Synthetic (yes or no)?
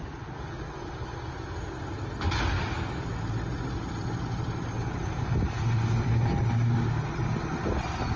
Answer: no